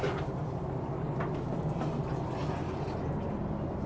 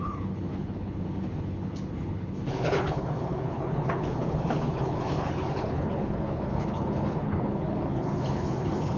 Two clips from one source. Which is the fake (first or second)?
second